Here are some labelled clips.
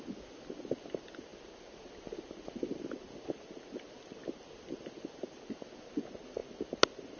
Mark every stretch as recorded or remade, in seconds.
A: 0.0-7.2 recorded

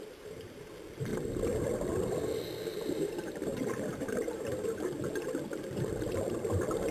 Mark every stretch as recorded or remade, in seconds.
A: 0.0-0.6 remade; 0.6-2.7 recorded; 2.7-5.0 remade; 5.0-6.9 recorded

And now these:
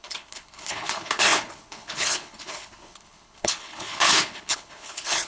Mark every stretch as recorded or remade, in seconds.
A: 0.0-5.3 remade